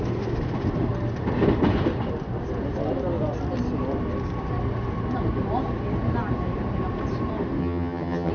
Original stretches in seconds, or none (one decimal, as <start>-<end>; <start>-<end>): 0.0-7.6